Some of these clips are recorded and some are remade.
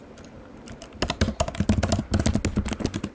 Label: recorded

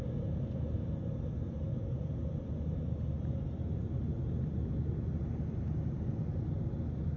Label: recorded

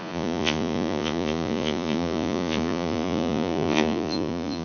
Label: remade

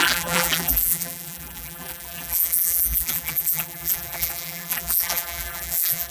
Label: remade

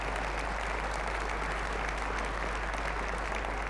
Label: recorded